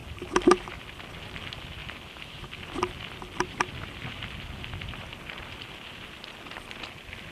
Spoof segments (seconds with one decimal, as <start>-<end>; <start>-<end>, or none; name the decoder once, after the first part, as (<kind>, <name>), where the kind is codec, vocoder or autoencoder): none